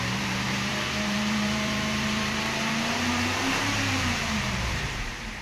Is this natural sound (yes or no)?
no